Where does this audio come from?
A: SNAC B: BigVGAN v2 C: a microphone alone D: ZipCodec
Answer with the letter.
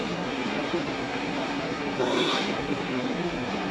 A